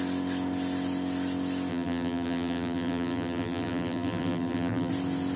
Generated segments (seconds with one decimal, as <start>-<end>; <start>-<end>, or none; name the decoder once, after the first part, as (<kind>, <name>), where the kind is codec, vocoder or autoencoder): 1.7-4.9 (vocoder, BigVGAN v2)